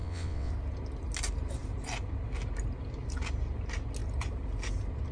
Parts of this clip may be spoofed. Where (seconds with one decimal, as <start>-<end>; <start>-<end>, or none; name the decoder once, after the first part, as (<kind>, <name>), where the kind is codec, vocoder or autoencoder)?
0.0-0.5 (vocoder, WaveNeXt)